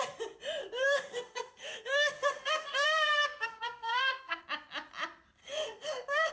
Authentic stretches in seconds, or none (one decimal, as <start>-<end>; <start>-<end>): 0.0-0.6; 4.4-5.4